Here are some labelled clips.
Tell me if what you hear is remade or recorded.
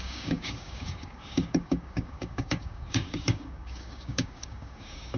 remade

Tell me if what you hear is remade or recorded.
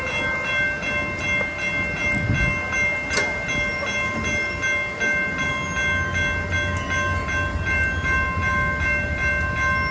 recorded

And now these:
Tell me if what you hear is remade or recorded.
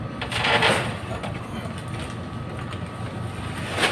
recorded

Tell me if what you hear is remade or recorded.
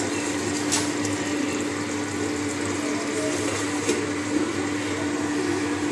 recorded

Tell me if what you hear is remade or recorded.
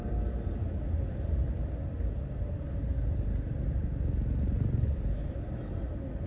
recorded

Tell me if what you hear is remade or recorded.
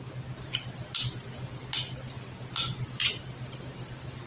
recorded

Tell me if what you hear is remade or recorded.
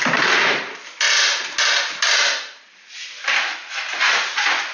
recorded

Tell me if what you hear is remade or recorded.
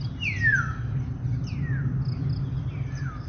recorded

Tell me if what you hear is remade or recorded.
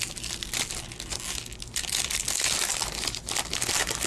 recorded